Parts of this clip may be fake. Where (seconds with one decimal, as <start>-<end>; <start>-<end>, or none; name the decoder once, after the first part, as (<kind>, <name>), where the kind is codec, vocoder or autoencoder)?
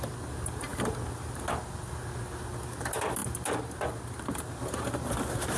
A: none